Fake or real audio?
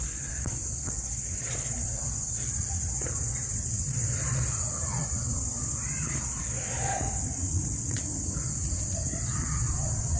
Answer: fake